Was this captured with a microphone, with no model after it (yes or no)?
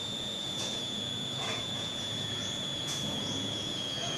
no